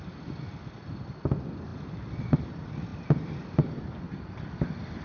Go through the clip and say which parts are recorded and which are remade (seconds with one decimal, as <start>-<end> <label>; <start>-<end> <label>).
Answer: 0.0-5.0 recorded